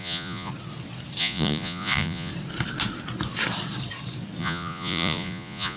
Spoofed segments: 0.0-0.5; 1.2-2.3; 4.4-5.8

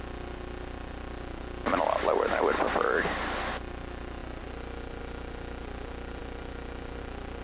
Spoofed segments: none

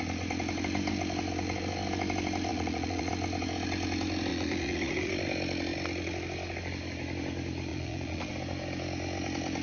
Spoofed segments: 2.5-3.1; 4.3-5.1; 7.7-8.3

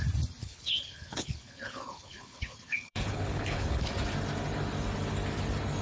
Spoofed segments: 0.4-3.9

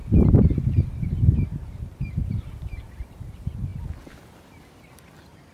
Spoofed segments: 0.0-3.3

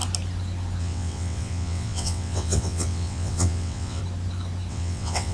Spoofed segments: 0.8-4.0; 4.7-5.3